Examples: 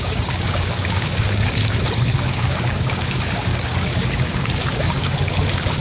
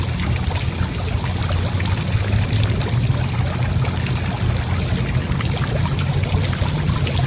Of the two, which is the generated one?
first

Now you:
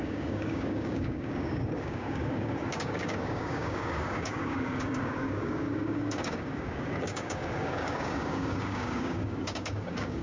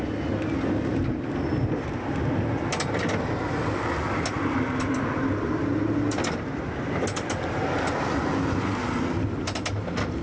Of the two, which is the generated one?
first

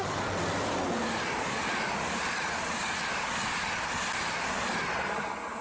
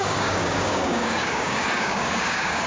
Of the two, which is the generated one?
second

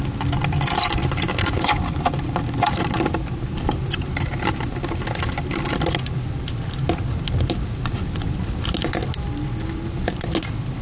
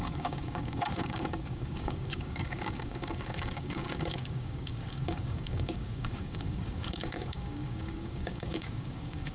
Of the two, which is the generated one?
second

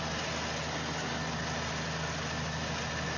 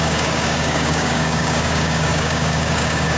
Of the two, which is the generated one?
second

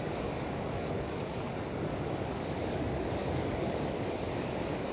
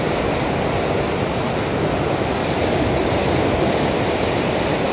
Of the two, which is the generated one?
first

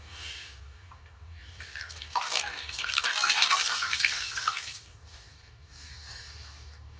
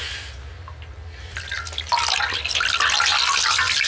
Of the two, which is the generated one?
first